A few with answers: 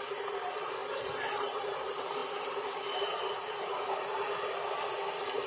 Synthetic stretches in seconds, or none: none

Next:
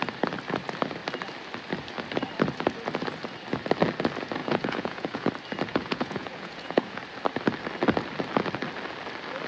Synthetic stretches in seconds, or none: 4.4-5.3 (vocoder, Vocos); 5.7-7.0

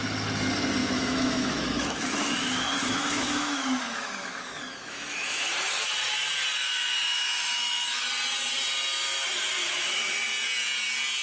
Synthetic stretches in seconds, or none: 0.8-5.4 (autoencoder, DAC-VAE); 6.6-8.1; 9.6-10.2

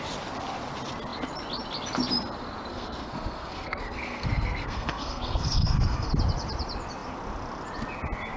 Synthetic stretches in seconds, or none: 2.7-6.1 (codec, SNAC)

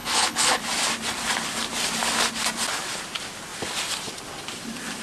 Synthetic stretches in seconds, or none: 0.0-0.6 (codec, HILCodec)